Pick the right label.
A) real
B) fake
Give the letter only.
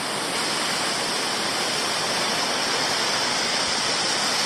A